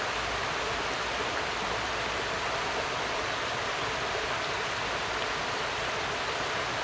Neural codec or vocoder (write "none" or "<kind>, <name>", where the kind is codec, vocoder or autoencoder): none